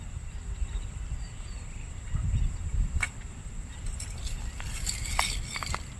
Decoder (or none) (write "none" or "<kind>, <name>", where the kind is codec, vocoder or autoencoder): vocoder, BigVGAN v2